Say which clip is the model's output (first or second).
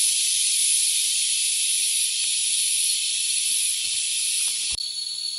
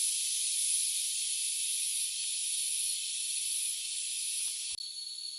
first